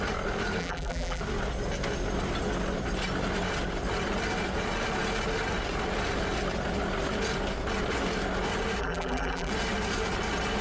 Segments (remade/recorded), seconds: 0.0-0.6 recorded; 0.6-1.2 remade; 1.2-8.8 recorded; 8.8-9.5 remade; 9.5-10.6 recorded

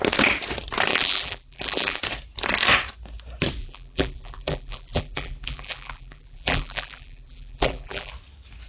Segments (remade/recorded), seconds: 0.0-0.9 recorded; 0.9-2.0 remade; 2.0-3.6 recorded; 3.6-8.1 remade; 8.1-8.7 recorded

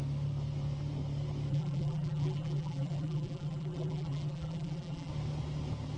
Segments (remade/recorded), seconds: 0.0-1.5 recorded; 1.5-5.1 remade; 5.1-6.0 recorded

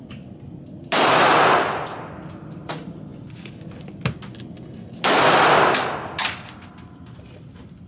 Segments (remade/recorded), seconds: 0.0-7.9 recorded

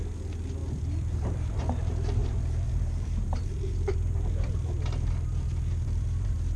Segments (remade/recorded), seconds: 0.0-0.6 recorded; 0.6-1.6 remade; 1.6-2.2 recorded; 2.2-6.6 remade

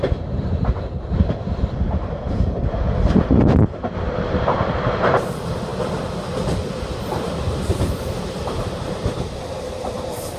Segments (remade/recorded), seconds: 0.0-5.7 remade; 5.7-7.1 recorded; 7.1-10.4 remade

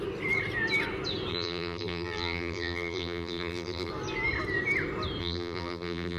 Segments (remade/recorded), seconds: 0.0-1.3 recorded; 1.3-3.9 remade; 3.9-5.2 recorded; 5.2-6.2 remade